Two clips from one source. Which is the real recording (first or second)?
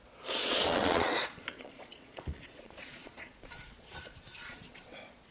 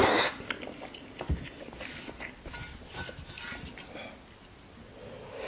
second